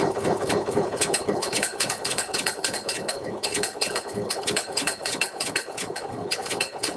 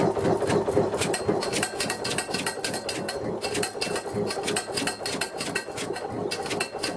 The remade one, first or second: first